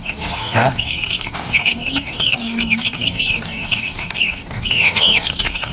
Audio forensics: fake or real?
fake